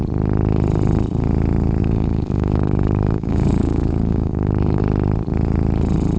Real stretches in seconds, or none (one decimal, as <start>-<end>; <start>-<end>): 0.0-1.8; 4.8-6.2

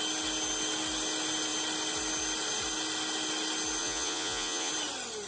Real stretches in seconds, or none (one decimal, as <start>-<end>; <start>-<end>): 0.0-3.8; 4.7-5.3

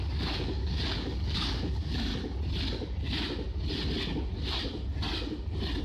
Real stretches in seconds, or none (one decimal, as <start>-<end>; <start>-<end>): 2.1-5.8